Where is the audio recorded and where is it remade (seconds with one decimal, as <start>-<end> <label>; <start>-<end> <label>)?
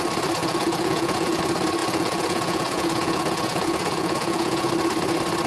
0.0-0.4 recorded; 0.4-1.4 remade; 1.4-1.8 recorded; 1.8-4.7 remade; 4.7-5.5 recorded